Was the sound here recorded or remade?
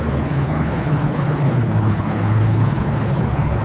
remade